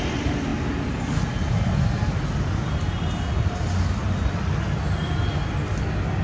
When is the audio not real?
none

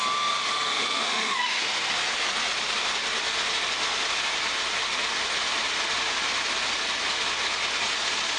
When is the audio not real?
0.4-1.6 (autoencoder, DAC-VAE)

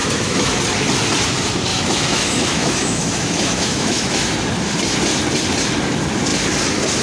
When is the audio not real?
0.0-0.6 (autoencoder, DAC-VAE); 1.7-4.3